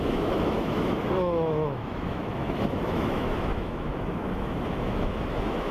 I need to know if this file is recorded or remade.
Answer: remade